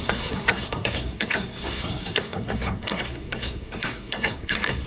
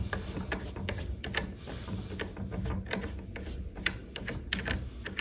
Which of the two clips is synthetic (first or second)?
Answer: first